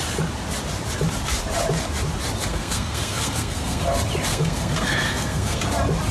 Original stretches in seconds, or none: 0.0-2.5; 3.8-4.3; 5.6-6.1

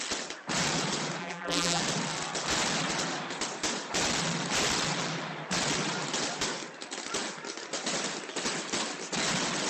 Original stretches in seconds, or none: 0.0-1.2; 1.8-9.7

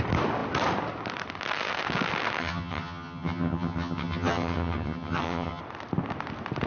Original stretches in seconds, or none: 0.0-2.4; 5.6-6.7

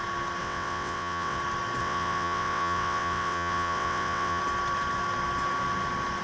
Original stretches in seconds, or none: 0.0-0.4; 1.4-1.8; 4.4-6.2

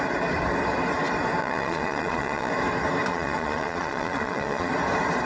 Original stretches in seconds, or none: 0.0-1.4; 2.5-3.1; 4.7-5.3

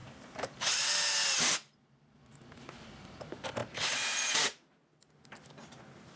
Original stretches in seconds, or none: 0.7-3.6; 4.2-6.2